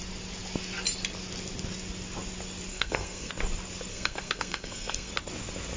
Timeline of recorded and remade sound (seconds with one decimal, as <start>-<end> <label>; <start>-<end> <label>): 0.0-2.7 recorded; 2.7-3.3 remade; 3.3-3.9 recorded; 3.9-5.1 remade; 5.1-5.8 recorded